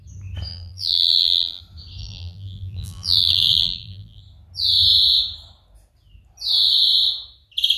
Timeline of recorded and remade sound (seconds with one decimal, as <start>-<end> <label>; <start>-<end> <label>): 0.0-0.5 recorded; 0.5-1.6 remade; 1.6-2.0 recorded; 2.0-4.2 remade; 4.2-7.8 recorded